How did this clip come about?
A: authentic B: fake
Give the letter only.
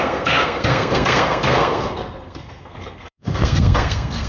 B